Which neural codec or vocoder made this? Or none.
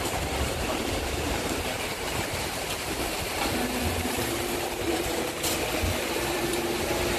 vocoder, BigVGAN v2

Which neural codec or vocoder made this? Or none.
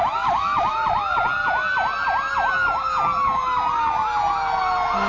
none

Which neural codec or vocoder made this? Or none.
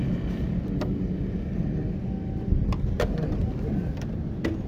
none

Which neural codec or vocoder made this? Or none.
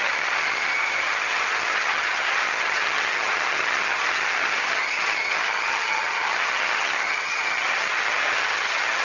vocoder, HiFi-GAN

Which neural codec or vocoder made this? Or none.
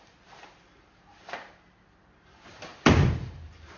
vocoder, BigVGAN v2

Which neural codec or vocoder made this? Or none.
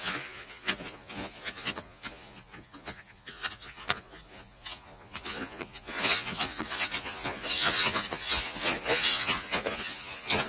vocoder, Vocos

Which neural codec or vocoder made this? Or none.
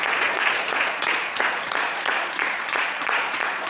vocoder, Vocos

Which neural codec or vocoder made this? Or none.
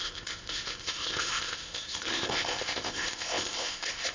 codec, ZipCodec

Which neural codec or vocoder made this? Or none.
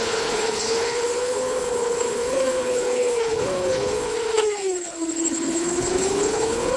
codec, HILCodec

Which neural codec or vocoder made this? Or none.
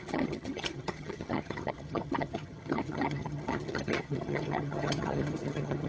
vocoder, HiFi-GAN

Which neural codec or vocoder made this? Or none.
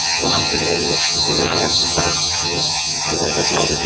vocoder, HiFi-GAN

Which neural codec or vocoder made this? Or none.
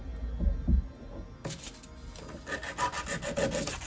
none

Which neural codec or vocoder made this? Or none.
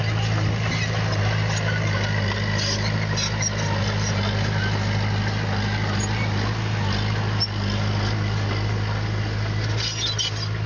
none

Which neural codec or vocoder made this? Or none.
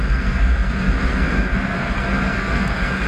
codec, SNAC